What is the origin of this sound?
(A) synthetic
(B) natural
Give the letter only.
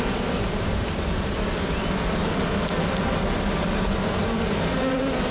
B